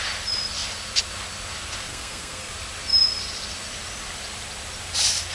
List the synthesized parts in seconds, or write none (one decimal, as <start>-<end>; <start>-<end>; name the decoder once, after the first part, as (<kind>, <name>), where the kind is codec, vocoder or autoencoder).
1.9-2.5 (codec, SNAC)